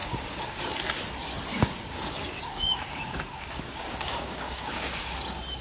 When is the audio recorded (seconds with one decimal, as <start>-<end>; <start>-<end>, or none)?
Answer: 0.6-1.5; 4.9-5.6